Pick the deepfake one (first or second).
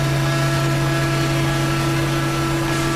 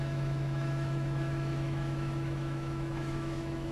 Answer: second